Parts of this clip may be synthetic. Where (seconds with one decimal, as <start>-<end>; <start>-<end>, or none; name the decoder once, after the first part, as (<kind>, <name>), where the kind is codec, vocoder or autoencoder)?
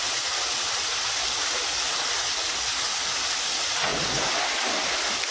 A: none